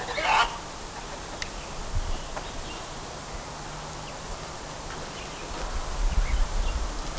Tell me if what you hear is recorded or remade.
recorded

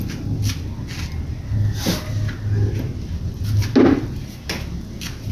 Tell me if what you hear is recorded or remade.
recorded